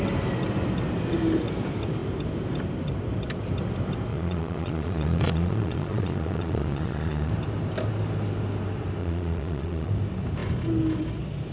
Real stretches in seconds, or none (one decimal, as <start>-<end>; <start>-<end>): 0.0-4.1; 7.3-9.0; 9.9-11.5